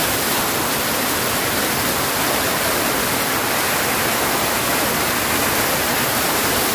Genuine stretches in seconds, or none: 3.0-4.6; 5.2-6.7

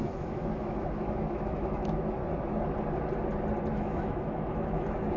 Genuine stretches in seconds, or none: 2.2-3.7

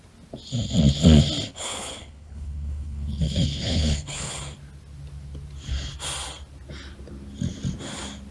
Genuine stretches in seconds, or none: 0.0-1.5; 4.4-8.3

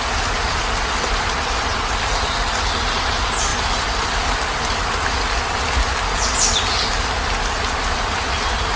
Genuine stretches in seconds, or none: 0.0-8.8

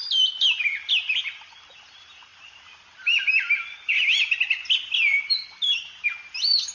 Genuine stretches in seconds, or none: 0.0-6.7

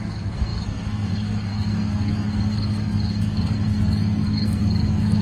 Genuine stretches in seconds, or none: none